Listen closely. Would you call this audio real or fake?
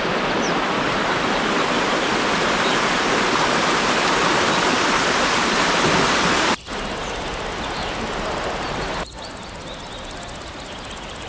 real